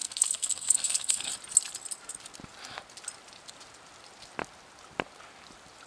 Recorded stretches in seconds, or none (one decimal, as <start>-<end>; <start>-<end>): 1.3-5.9